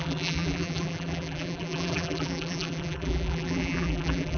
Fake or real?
fake